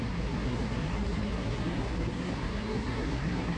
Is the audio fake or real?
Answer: fake